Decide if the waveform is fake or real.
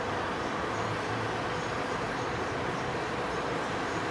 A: real